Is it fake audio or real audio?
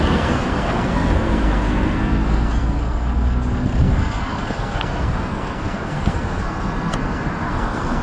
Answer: fake